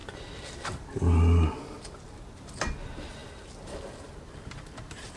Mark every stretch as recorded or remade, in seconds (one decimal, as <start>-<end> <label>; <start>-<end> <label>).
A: 0.0-5.2 recorded